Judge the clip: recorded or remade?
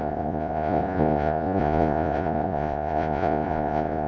remade